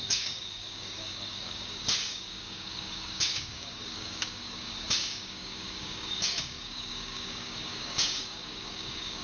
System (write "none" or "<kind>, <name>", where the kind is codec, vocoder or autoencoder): codec, DAC